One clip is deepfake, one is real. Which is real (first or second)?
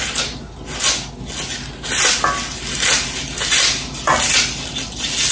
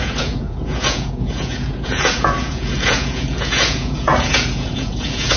first